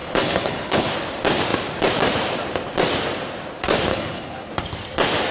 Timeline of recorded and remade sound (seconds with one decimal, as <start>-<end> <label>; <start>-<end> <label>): 0.0-0.9 remade; 0.9-3.9 recorded; 3.9-4.5 remade; 4.5-5.3 recorded